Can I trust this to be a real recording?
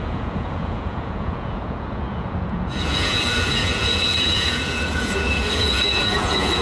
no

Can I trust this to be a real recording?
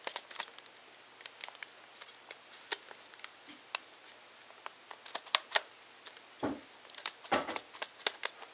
yes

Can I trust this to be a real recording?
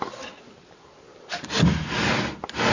yes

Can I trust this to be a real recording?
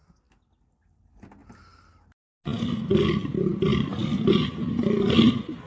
yes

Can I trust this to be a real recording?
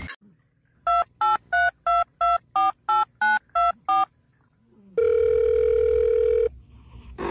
yes